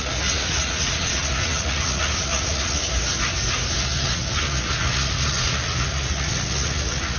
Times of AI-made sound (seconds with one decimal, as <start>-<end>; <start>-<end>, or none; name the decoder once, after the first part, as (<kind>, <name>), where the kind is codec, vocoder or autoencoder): 0.0-2.8 (vocoder, Vocos); 3.8-7.2

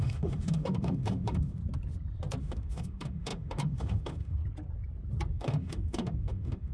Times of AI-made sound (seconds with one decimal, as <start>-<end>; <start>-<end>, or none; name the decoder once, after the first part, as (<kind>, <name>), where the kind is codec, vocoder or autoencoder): 0.0-1.6 (autoencoder, DAC-VAE); 2.4-4.4; 5.3-6.7

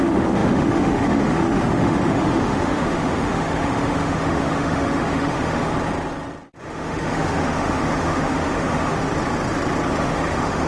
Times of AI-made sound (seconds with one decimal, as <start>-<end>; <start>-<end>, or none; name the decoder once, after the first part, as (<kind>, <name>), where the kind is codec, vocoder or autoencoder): 0.0-5.7 (autoencoder, DAC-VAE); 6.6-9.1; 9.9-10.7

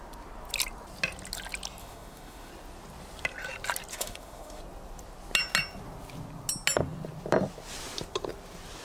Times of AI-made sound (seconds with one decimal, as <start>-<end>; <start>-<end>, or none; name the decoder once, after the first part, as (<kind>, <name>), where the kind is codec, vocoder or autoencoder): 1.8-2.5 (autoencoder, DAC-VAE); 3.9-4.6

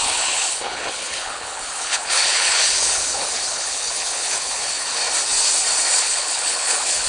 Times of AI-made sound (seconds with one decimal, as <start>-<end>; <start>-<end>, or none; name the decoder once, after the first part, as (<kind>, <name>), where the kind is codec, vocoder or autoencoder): 0.0-5.0 (codec, HILCodec); 5.9-7.1